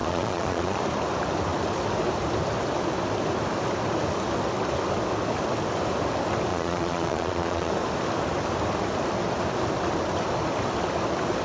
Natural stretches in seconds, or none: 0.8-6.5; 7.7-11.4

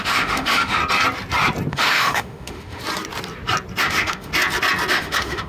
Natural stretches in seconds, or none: 0.8-1.7; 2.8-3.8; 4.3-4.9

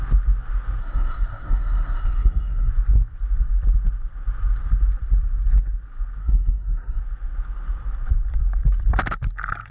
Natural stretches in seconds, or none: 0.0-0.8; 2.7-6.2; 7.0-9.7